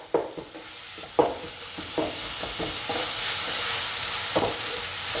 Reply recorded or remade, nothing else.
recorded